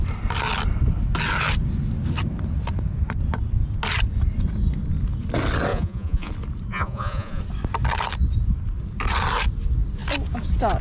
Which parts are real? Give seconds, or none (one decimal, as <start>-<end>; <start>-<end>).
0.0-5.7; 6.3-6.7; 7.4-10.8